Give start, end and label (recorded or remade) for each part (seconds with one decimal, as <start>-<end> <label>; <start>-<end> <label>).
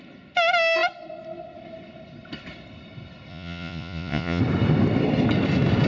0.0-3.3 recorded; 3.3-4.4 remade; 4.4-5.9 recorded